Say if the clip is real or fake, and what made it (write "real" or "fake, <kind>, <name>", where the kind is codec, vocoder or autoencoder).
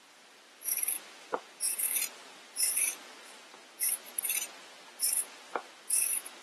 fake, vocoder, BigVGAN v2